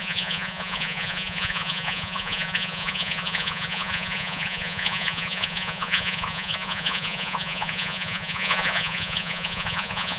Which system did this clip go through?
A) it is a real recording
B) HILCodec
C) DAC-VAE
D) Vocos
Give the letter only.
D